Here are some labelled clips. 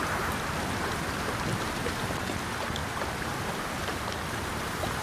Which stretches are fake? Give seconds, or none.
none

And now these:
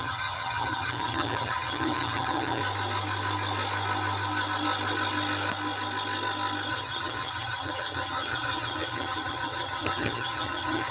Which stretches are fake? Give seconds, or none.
0.0-2.6 (vocoder, HiFi-GAN); 6.7-10.9